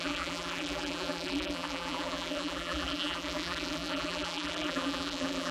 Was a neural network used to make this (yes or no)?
yes